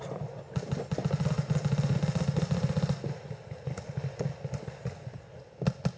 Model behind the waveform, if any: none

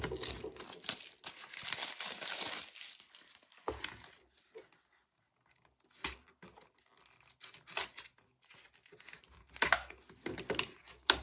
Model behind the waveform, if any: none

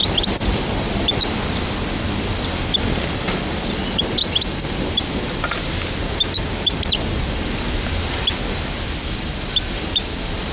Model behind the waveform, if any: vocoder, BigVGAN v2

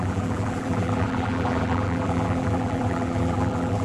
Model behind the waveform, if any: vocoder, BigVGAN v2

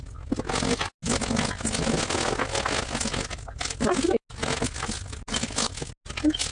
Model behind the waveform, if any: none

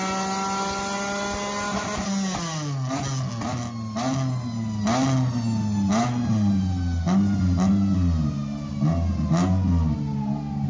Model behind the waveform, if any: none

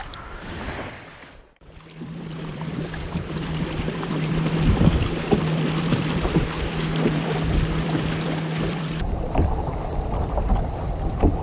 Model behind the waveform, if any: vocoder, BigVGAN v2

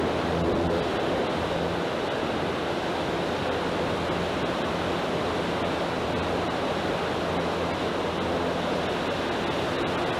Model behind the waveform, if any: none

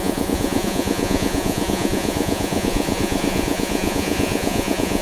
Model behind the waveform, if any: vocoder, Vocos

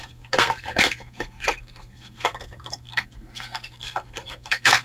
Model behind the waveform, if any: codec, SNAC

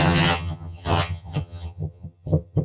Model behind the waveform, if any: vocoder, HiFi-GAN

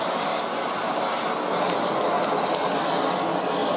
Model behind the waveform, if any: none